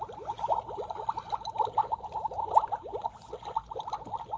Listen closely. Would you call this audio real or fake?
real